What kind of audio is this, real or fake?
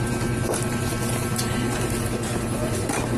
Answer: real